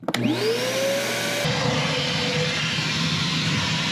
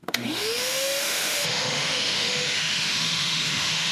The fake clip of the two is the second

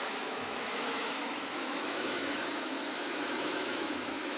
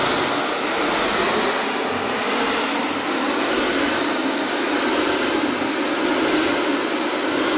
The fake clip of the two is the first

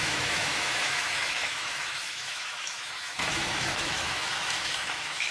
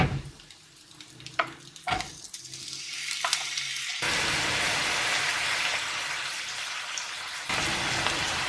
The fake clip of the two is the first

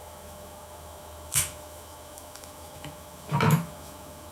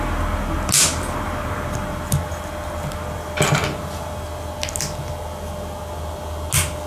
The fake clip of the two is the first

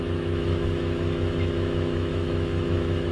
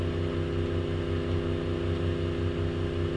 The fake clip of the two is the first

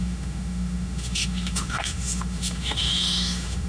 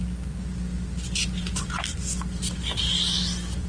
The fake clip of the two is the first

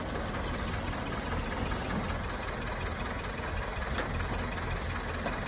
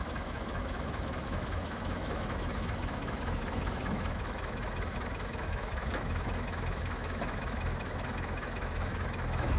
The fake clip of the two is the second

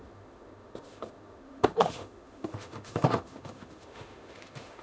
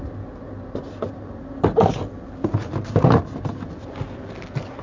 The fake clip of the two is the first